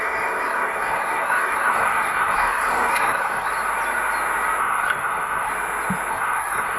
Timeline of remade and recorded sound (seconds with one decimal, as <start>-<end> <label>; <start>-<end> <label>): 0.0-3.5 remade; 3.5-4.6 recorded; 4.6-5.5 remade; 5.5-6.1 recorded; 6.1-6.8 remade